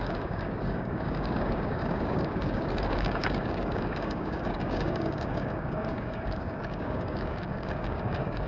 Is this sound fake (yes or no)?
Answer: yes